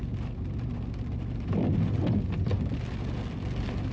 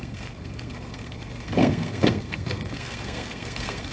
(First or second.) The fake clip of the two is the second